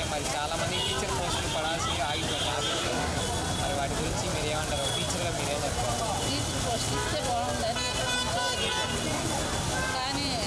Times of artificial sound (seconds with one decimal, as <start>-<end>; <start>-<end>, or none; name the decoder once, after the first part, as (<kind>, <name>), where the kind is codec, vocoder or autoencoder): 2.7-3.2 (codec, SNAC)